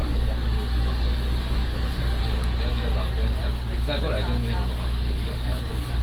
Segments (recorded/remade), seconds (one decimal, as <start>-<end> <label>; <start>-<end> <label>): 0.0-2.2 remade; 2.2-2.7 recorded; 2.7-3.4 remade; 3.4-4.4 recorded; 4.4-6.0 remade